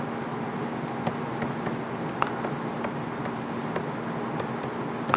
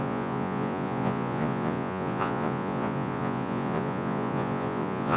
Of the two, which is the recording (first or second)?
first